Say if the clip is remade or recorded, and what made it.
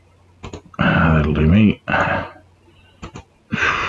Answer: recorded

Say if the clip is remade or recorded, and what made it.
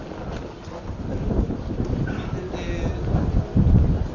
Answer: recorded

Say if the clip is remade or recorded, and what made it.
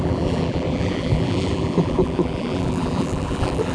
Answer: remade, vocoder, BigVGAN v2